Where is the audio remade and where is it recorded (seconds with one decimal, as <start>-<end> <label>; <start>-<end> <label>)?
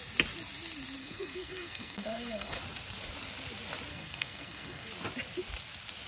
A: 0.0-1.0 recorded; 1.0-2.6 remade; 2.6-3.9 recorded; 3.9-4.9 remade; 4.9-6.1 recorded